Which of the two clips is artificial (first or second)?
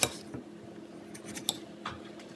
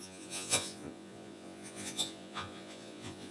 second